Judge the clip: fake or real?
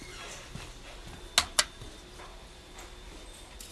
real